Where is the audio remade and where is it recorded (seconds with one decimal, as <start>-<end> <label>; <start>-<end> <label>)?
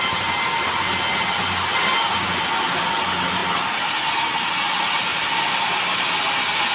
0.0-6.7 recorded